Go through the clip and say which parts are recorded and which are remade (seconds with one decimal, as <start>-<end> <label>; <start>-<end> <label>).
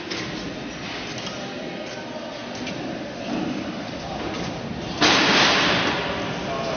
0.0-6.8 recorded